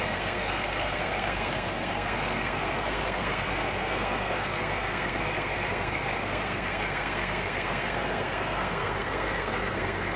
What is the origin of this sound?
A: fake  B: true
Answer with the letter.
A